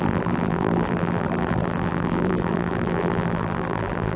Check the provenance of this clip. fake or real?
fake